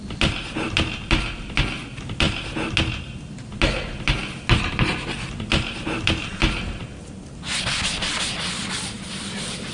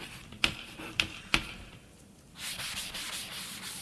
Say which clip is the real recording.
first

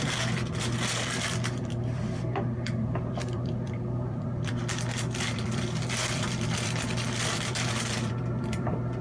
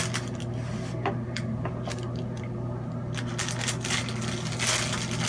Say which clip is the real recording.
second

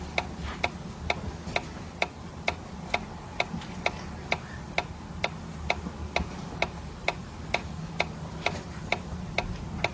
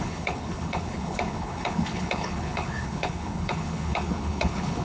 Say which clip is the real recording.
first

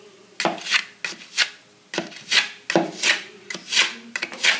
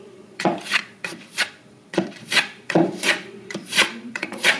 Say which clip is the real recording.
first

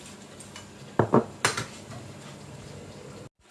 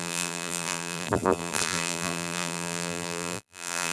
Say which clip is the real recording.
first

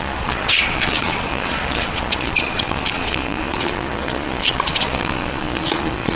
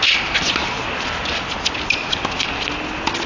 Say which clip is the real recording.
second